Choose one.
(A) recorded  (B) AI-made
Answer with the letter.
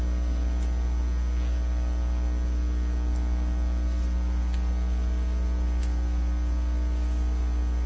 A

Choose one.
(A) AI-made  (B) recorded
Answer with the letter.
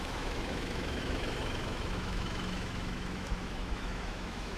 A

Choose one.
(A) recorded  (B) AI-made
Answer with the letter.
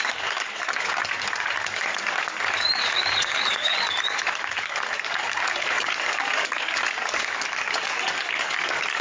B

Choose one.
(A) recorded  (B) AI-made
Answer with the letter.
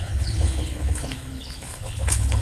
B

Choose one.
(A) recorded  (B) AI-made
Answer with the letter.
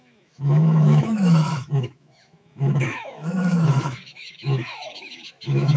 B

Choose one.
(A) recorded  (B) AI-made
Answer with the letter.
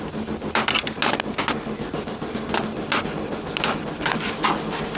A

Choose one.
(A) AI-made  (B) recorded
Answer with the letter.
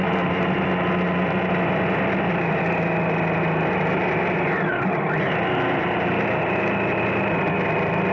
B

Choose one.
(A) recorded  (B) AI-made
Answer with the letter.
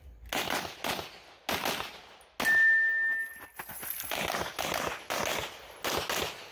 A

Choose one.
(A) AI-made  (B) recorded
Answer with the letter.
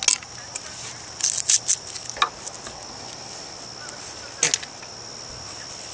B